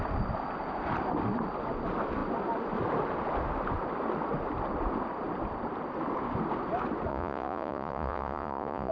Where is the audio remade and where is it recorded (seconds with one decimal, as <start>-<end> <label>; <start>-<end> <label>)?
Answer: 0.0-7.1 recorded; 7.1-8.9 remade

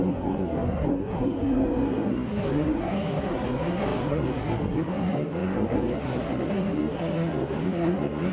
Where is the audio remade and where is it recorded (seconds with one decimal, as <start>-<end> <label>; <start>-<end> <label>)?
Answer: 0.0-8.3 remade